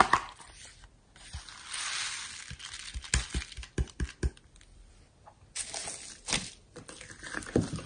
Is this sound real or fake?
real